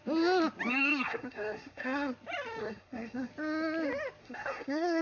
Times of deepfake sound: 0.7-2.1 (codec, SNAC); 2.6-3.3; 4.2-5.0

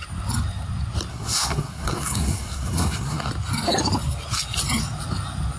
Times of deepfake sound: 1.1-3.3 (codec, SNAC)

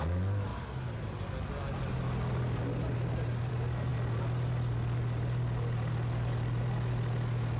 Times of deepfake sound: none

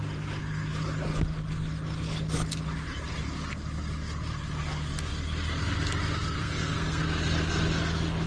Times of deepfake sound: 6.4-7.0 (codec, SNAC)